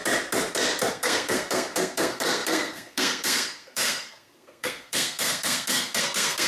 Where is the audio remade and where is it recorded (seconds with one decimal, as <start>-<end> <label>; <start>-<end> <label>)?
0.0-0.9 recorded; 0.9-6.5 remade